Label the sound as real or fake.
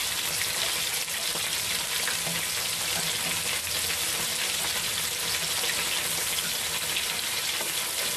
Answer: real